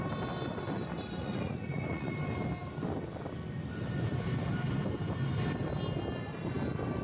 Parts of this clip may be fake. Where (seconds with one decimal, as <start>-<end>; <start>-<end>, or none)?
1.2-2.1